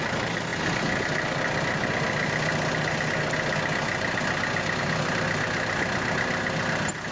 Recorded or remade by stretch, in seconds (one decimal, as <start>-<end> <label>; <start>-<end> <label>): 0.0-7.1 recorded